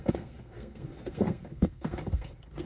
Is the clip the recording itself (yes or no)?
no